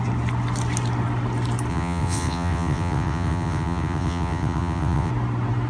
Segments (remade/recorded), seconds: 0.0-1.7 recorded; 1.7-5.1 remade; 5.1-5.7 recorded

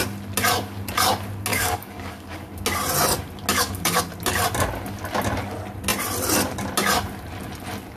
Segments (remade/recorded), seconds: 0.0-1.5 recorded; 1.5-2.5 remade; 2.5-3.5 recorded; 3.5-4.0 remade; 4.0-8.0 recorded

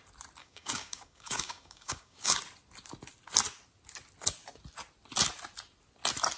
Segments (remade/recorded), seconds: 0.0-0.4 recorded; 0.4-2.4 remade; 2.4-6.4 recorded

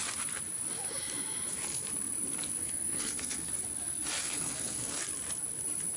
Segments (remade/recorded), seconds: 0.0-2.6 recorded; 2.6-3.5 remade; 3.5-4.2 recorded; 4.2-5.0 remade; 5.0-6.0 recorded